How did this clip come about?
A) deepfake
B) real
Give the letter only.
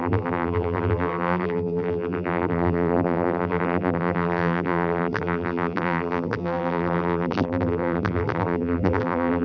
A